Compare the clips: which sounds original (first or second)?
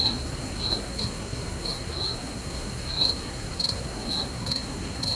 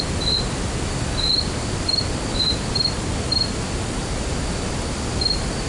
second